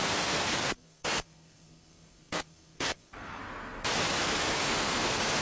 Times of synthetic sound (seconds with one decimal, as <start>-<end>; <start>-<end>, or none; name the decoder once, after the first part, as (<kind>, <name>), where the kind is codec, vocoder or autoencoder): 0.0-3.4 (codec, SNAC); 4.2-5.4